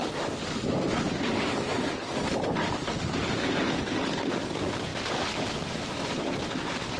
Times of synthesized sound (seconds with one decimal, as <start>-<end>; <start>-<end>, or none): none